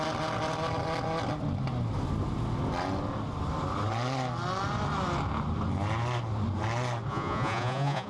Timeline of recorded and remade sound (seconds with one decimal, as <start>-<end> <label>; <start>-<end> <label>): 0.0-7.1 recorded; 7.1-8.1 remade